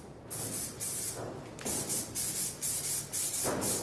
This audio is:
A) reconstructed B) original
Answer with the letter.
B